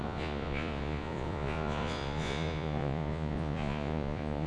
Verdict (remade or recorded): remade